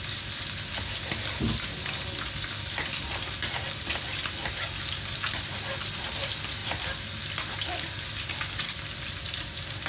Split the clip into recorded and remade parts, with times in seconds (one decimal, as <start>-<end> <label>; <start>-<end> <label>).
0.0-9.9 recorded